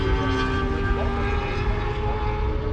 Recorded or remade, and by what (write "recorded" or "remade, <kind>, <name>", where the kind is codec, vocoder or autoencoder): recorded